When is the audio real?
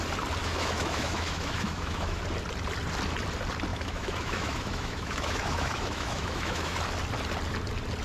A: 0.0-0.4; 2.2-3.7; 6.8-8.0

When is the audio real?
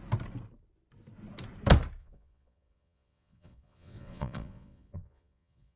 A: 0.0-2.0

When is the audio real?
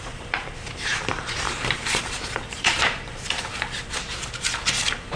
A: none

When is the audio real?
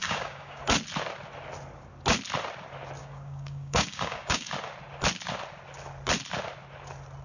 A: 0.6-3.0; 4.5-7.2